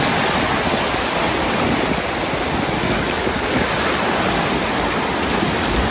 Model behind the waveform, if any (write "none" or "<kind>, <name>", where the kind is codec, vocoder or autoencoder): none